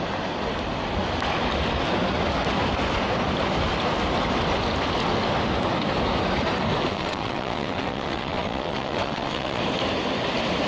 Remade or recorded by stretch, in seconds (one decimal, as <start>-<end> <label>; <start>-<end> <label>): 0.0-6.9 recorded; 6.9-9.6 remade; 9.6-10.7 recorded